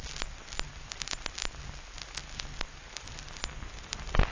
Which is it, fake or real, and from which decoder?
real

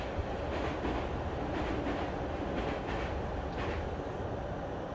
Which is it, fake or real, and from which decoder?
real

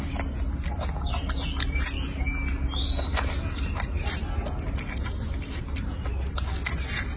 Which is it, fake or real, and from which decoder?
real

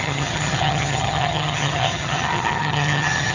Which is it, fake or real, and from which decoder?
fake, vocoder, HiFi-GAN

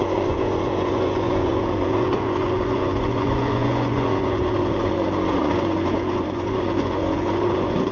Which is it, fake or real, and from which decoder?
fake, vocoder, Vocos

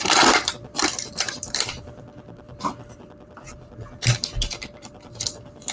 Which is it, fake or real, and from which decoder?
fake, vocoder, BigVGAN v2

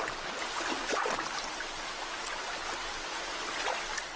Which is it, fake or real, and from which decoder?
real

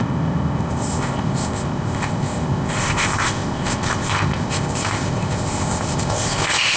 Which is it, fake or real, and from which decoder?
fake, codec, ZipCodec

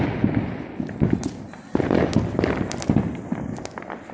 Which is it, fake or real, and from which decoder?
real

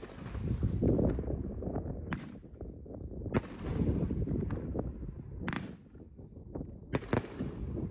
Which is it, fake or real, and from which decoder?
real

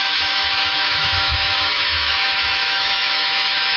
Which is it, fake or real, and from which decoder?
fake, autoencoder, DAC-VAE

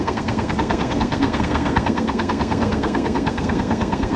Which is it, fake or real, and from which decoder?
fake, codec, SNAC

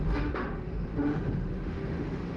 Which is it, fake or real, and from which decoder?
fake, autoencoder, DAC-VAE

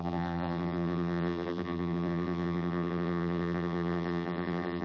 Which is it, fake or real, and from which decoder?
fake, vocoder, BigVGAN v2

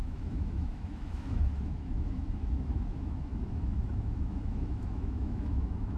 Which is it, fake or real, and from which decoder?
fake, autoencoder, DAC-VAE